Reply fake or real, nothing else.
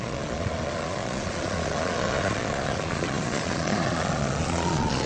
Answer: fake